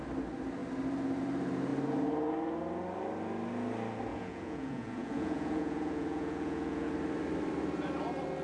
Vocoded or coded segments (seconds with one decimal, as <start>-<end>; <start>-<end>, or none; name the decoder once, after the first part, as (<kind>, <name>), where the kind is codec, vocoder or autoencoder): 4.1-6.9 (vocoder, Vocos)